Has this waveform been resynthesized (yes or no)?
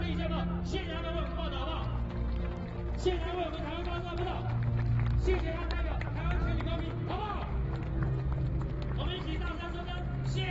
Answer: no